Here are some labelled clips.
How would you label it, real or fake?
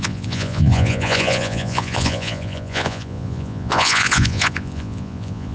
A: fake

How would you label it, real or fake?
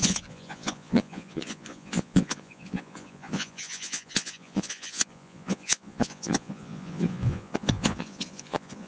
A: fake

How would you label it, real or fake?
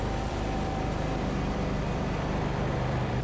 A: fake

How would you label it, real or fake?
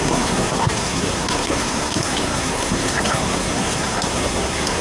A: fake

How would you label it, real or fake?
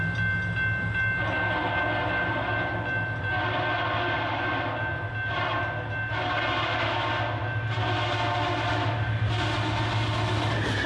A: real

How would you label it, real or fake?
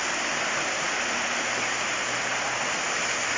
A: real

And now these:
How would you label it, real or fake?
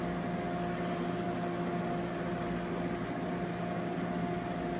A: real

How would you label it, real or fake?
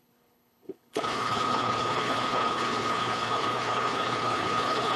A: fake